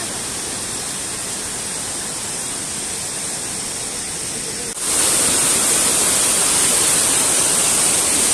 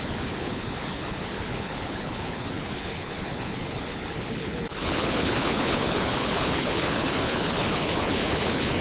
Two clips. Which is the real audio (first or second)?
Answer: first